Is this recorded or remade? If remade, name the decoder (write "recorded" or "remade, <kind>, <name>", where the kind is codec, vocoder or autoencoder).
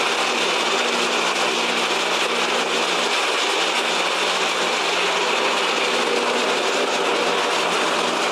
recorded